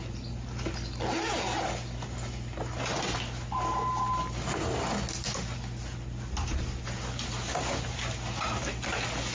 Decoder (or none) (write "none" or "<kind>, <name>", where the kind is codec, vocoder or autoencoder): none